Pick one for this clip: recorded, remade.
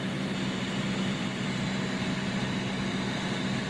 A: recorded